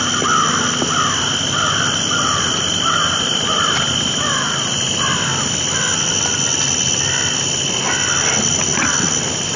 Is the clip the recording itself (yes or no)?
yes